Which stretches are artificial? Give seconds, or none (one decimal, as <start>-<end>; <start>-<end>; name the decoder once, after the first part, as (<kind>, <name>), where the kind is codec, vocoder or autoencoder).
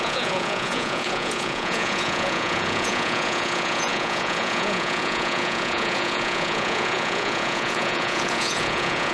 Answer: 0.0-9.1 (vocoder, Vocos)